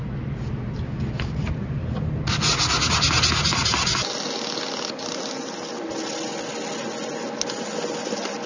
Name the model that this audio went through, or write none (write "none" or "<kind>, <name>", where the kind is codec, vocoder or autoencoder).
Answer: none